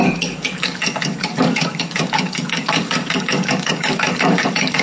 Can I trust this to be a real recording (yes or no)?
no